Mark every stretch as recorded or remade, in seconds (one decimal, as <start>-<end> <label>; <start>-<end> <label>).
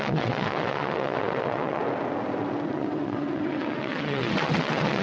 0.0-1.8 remade; 1.8-2.7 recorded; 2.7-5.0 remade